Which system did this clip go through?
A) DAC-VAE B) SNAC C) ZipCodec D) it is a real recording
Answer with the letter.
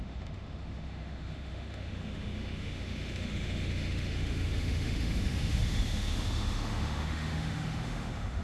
A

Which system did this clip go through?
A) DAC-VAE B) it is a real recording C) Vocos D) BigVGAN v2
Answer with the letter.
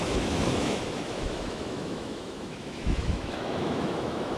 A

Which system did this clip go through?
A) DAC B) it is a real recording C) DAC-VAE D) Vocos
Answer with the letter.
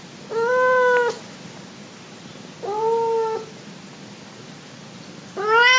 B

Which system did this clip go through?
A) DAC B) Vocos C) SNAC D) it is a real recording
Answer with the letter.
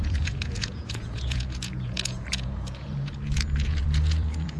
B